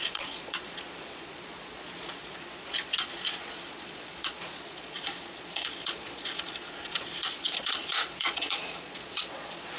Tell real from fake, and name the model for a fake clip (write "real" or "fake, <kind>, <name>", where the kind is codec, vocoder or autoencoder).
fake, vocoder, Vocos